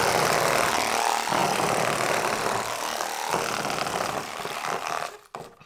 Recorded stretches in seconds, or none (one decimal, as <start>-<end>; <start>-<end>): 0.0-1.4; 3.3-5.7